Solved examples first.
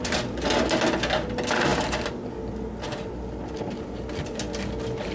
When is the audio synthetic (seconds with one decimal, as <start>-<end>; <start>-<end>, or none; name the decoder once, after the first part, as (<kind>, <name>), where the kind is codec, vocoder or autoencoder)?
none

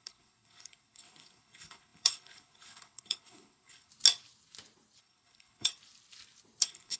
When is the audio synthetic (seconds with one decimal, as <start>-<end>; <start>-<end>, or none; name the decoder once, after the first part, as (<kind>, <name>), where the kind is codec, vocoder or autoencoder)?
0.0-3.9 (codec, HILCodec); 5.0-5.7; 6.6-7.0

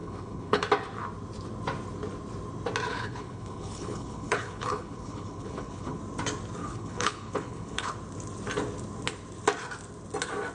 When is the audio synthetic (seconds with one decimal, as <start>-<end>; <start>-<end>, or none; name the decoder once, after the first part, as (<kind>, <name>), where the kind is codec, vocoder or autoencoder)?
0.0-0.6 (codec, HILCodec); 2.9-6.0; 6.6-7.9

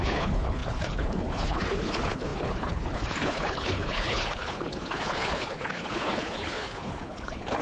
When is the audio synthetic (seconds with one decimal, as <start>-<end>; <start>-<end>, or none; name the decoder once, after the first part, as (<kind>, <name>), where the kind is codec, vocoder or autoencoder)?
0.0-7.6 (codec, HILCodec)

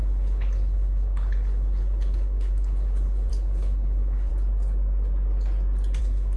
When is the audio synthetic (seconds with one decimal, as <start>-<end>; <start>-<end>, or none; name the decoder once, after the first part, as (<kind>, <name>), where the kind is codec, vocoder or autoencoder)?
0.0-4.3 (codec, HILCodec); 6.0-6.4